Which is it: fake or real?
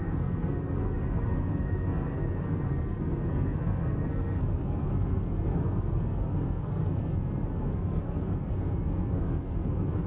fake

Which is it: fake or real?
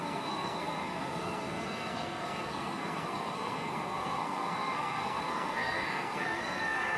fake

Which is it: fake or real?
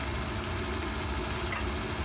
real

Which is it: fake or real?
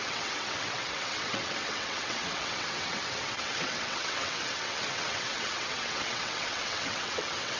fake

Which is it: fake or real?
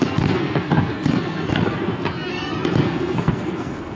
fake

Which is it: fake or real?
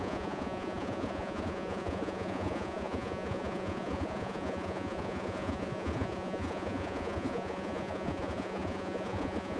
fake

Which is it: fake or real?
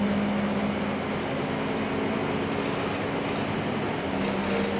real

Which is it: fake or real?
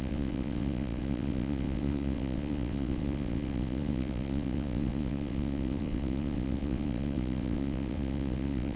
fake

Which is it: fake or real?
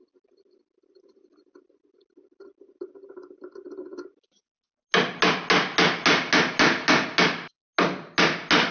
real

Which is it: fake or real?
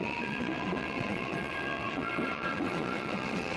fake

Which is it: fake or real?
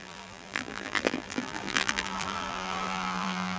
fake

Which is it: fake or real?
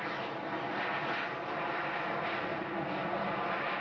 real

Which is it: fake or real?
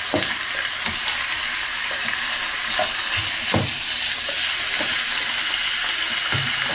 real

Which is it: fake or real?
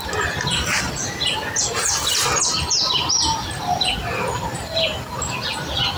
real